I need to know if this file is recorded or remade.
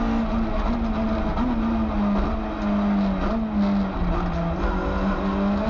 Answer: recorded